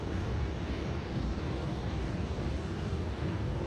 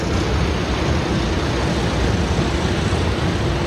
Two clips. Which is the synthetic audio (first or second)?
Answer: first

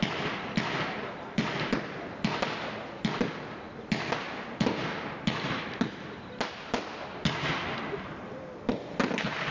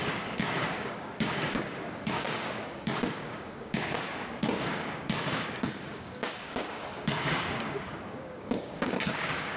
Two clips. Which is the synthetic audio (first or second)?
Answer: second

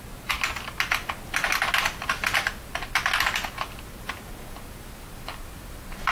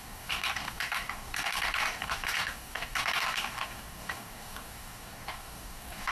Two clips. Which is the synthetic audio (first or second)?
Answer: second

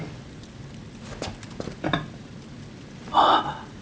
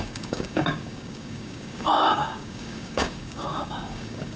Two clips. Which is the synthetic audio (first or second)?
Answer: second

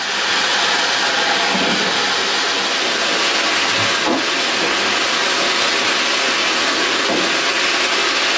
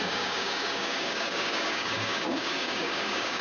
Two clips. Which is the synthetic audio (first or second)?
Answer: second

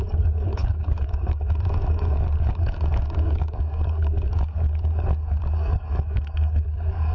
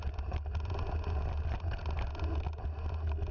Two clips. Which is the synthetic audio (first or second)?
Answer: first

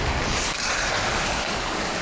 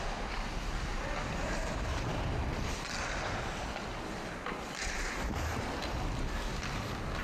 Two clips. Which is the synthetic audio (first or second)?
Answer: first